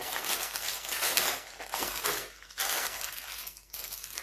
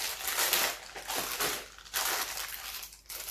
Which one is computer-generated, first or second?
first